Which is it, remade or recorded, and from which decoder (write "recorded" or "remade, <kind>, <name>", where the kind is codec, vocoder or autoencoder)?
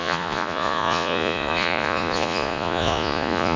remade, vocoder, Vocos